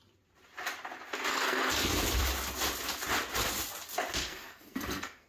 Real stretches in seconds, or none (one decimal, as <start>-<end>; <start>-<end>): 0.0-1.3; 1.9-4.2